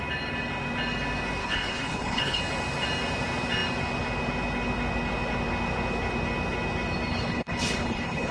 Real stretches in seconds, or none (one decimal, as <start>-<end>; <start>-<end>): 0.0-1.4; 2.4-7.1